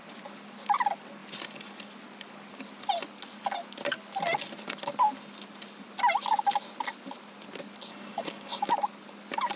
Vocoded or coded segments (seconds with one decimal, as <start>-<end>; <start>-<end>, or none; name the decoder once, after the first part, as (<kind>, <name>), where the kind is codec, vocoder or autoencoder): 7.9-8.7 (codec, DAC)